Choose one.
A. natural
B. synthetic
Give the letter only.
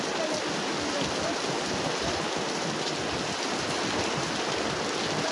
A